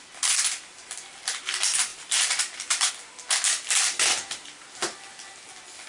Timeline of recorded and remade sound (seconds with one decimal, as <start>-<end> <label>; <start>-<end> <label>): 0.0-1.9 recorded; 1.9-2.9 remade; 2.9-5.9 recorded